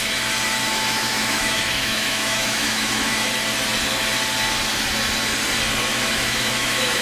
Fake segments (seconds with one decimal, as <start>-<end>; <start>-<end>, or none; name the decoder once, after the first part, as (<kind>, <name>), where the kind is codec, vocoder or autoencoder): 0.6-3.3 (autoencoder, DAC-VAE); 5.9-7.0